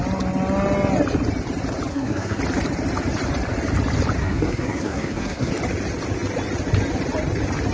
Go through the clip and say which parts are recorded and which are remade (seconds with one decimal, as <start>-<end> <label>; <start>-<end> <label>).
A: 0.0-1.9 recorded; 1.9-2.4 remade; 2.4-4.2 recorded; 4.2-5.5 remade; 5.5-7.7 recorded